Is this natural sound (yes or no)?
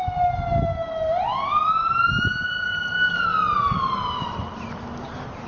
yes